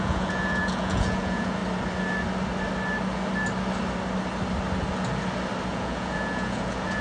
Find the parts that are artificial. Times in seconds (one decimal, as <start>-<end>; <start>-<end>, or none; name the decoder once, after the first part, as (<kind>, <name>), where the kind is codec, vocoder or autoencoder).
0.0-1.6 (vocoder, Vocos); 5.7-7.0